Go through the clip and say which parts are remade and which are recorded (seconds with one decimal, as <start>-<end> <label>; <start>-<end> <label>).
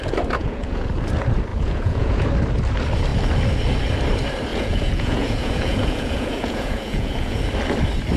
0.0-0.4 recorded; 0.4-0.9 remade; 0.9-1.5 recorded; 1.5-2.3 remade; 2.3-4.5 recorded; 4.5-7.4 remade; 7.4-8.2 recorded